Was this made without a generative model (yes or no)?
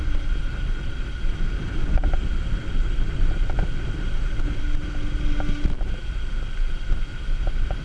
yes